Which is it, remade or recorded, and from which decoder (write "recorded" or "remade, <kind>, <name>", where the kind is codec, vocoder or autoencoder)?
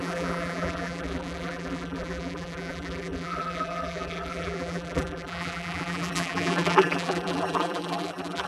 remade, vocoder, BigVGAN v2